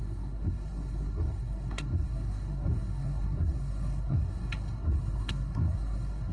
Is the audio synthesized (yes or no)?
yes